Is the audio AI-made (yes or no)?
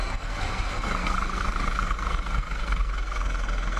yes